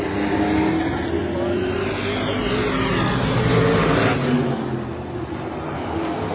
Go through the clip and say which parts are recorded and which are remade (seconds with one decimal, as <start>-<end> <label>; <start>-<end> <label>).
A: 0.0-6.3 recorded